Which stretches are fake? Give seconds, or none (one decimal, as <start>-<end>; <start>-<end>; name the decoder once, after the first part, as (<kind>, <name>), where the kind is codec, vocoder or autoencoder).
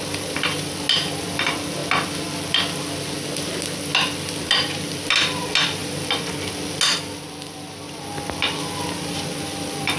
none